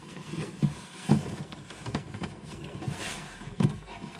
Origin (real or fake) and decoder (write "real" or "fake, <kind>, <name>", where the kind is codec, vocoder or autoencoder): fake, codec, SNAC